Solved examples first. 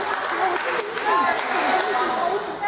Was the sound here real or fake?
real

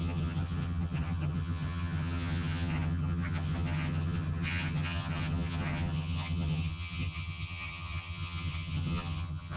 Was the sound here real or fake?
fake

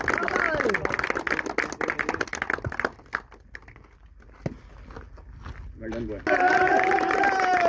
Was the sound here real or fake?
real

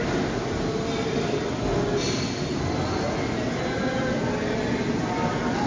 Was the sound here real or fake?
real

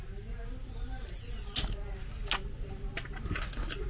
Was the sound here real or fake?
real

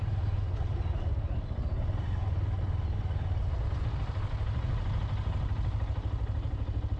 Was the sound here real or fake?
real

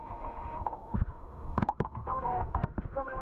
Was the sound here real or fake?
fake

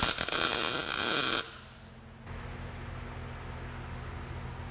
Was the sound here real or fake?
real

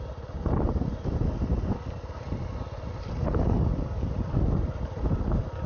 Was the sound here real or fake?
real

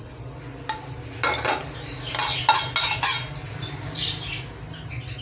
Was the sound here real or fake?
real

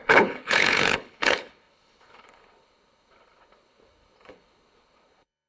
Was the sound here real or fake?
fake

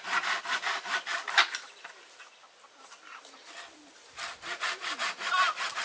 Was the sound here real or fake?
real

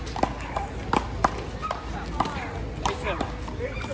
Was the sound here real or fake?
real